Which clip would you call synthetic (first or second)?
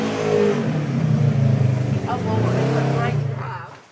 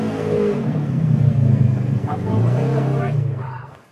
second